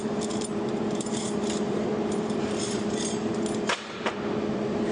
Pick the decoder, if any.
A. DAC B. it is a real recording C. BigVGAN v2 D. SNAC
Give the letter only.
C